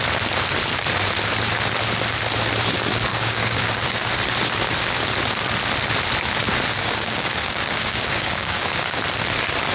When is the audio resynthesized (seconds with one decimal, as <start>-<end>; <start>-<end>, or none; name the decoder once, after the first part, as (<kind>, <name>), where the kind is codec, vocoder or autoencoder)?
3.1-4.1 (codec, DAC); 6.7-9.0

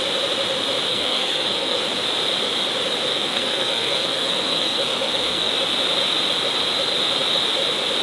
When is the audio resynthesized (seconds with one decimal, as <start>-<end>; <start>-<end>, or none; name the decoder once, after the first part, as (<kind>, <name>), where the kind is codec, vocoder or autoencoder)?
0.9-1.8 (codec, SNAC); 3.1-5.5

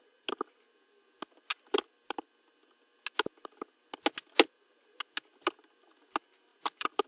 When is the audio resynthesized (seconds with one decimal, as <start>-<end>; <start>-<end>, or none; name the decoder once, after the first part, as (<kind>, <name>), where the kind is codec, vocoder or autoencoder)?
1.5-2.3 (vocoder, BigVGAN v2); 6.5-7.1

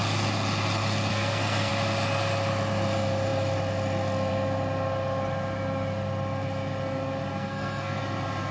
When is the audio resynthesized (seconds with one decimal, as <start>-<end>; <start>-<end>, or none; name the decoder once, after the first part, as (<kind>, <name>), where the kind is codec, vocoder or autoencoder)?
1.1-1.7 (codec, SNAC); 7.3-8.0

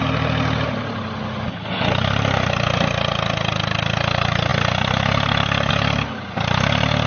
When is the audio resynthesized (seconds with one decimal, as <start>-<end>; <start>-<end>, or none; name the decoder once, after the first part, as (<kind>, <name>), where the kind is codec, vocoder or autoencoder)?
none

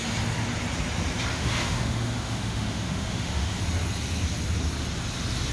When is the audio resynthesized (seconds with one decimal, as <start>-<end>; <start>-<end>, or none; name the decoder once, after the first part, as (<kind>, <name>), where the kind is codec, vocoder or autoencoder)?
1.3-3.6 (autoencoder, DAC-VAE)

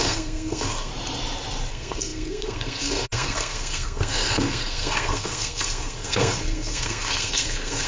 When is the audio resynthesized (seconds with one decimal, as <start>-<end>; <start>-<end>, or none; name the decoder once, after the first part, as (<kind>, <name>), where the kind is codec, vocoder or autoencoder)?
0.0-0.9 (codec, SNAC); 1.7-7.9